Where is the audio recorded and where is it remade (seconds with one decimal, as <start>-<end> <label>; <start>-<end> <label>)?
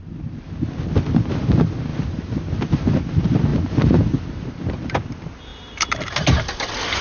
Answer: 0.0-1.9 recorded; 1.9-2.9 remade; 2.9-3.5 recorded; 3.5-4.9 remade; 4.9-7.0 recorded